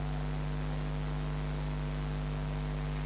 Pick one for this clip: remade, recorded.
recorded